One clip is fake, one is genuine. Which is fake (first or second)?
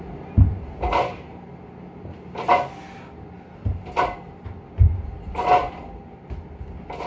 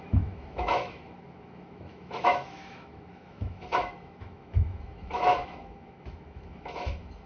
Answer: second